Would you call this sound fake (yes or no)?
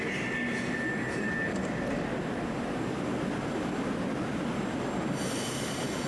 no